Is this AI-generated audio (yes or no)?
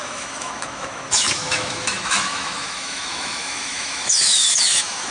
yes